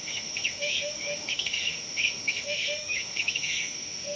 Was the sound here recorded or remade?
remade